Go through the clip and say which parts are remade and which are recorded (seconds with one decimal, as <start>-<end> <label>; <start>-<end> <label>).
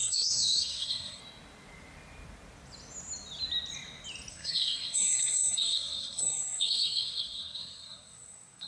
0.0-1.2 remade; 1.2-4.3 recorded; 4.3-8.7 remade